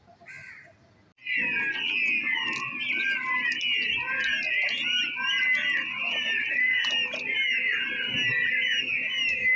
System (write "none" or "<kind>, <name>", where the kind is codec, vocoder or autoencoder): none